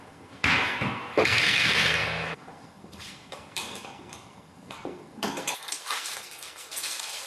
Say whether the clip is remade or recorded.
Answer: remade